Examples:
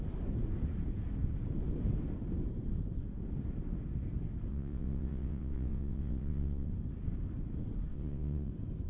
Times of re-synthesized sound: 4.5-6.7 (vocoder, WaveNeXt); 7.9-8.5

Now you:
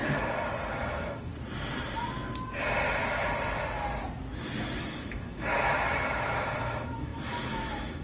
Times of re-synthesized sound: 0.7-1.3 (autoencoder, DAC-VAE); 4.8-8.0

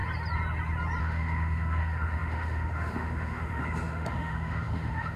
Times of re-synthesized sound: 1.0-5.2 (autoencoder, DAC-VAE)

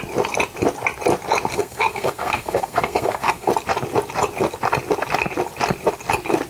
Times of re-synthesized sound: 1.5-3.5 (codec, SNAC)

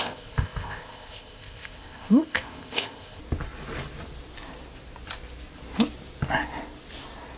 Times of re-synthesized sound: 0.0-3.2 (codec, ZipCodec)